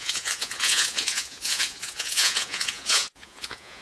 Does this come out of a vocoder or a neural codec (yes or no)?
yes